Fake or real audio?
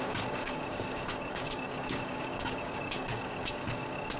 fake